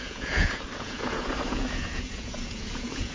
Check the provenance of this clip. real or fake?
fake